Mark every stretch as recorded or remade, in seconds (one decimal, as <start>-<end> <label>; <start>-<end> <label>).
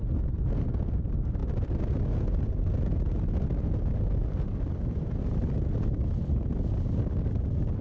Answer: 0.0-7.8 recorded